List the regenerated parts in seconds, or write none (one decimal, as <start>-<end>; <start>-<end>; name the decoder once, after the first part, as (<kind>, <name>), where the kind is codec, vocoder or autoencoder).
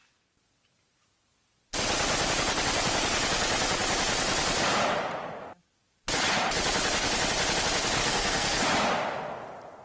8.0-8.6 (codec, SNAC)